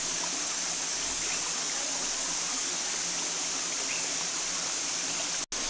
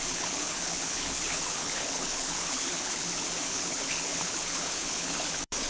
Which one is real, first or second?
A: first